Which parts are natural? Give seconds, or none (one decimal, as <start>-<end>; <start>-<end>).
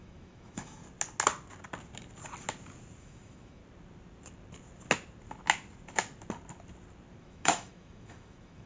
0.8-3.0; 3.6-7.2